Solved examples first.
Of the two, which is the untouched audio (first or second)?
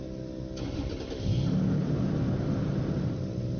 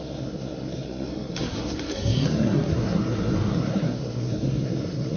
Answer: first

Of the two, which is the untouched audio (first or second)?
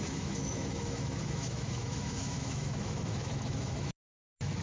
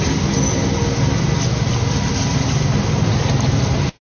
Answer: second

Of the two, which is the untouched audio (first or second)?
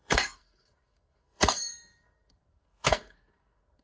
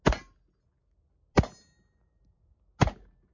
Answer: second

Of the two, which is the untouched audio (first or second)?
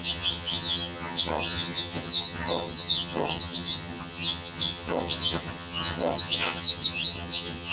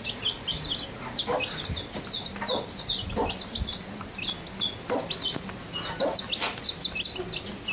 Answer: second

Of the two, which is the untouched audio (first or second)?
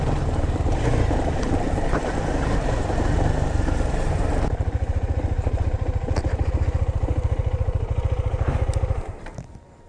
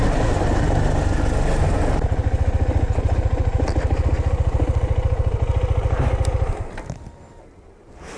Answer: second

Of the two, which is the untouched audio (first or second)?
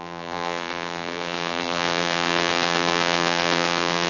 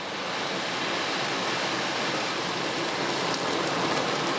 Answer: second